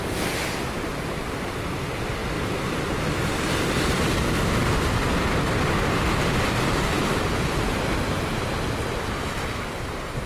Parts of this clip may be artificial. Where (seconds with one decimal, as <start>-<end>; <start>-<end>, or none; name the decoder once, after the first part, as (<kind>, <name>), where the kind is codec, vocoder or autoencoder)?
none